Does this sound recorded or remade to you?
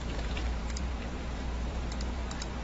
remade